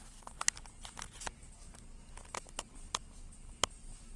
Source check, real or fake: real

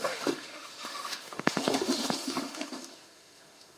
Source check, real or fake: fake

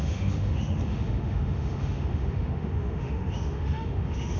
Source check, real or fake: fake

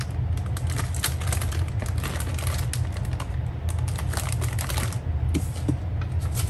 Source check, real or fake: real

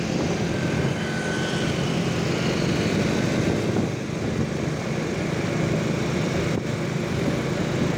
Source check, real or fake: real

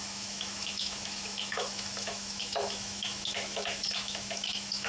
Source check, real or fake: fake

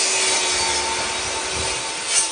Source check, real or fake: real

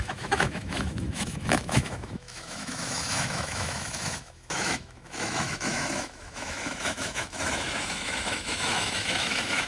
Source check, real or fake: fake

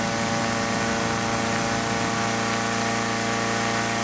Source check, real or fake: real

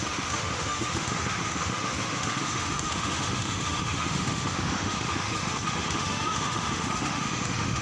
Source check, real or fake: fake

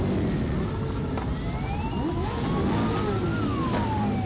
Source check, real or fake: real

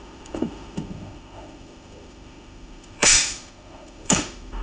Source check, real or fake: fake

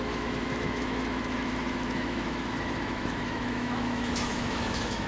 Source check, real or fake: fake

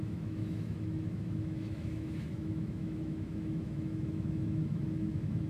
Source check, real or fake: fake